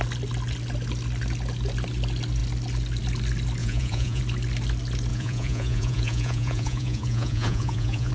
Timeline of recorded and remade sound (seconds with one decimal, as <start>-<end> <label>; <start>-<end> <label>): 0.0-3.6 recorded; 3.6-4.2 remade; 4.2-5.1 recorded; 5.1-8.1 remade